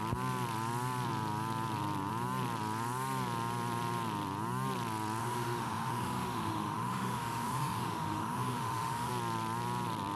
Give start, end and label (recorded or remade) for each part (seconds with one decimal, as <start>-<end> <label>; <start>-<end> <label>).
0.0-5.2 recorded; 5.2-9.1 remade; 9.1-10.2 recorded